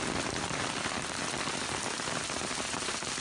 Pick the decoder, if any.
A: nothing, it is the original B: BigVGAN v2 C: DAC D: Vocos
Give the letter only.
A